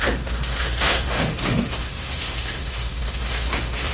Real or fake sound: fake